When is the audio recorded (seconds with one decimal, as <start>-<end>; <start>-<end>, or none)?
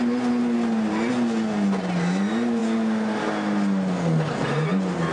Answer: 0.0-5.1